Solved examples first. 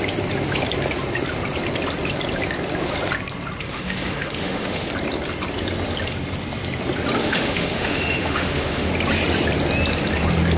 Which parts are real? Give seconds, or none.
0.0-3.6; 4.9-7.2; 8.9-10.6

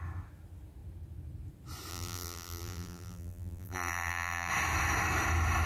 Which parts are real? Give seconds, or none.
0.0-1.9; 4.5-5.7

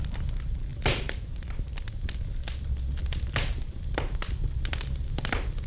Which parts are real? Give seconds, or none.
0.0-0.7; 1.3-5.7

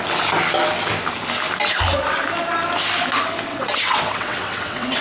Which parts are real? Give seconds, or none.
0.0-3.5

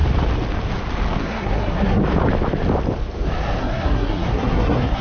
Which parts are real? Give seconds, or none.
0.0-1.2; 2.0-3.6